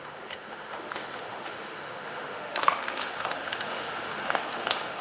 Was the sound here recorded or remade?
remade